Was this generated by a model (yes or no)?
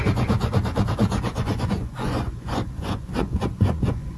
yes